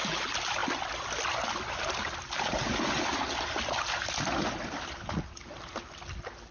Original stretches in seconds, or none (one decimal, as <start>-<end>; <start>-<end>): 0.0-6.5